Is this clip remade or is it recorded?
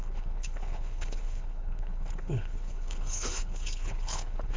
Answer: remade